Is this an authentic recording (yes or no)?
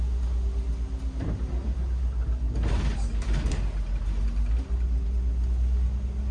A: yes